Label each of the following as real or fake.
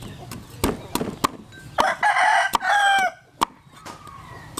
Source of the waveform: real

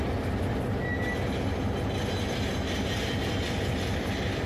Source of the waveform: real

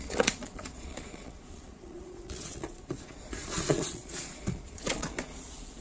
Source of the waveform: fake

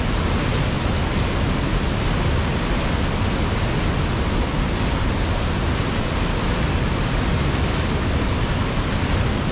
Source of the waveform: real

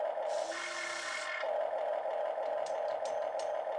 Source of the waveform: real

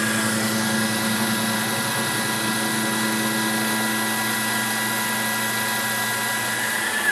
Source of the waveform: real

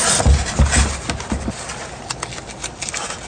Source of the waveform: real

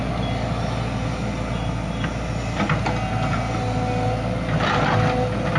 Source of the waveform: real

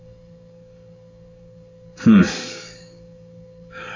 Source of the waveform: fake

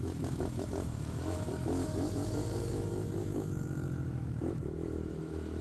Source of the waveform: fake